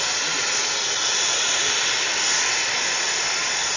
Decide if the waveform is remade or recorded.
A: recorded